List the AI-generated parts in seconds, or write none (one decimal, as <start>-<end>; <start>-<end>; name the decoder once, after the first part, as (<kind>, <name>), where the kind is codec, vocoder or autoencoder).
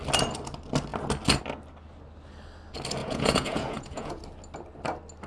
3.0-4.2 (vocoder, Vocos)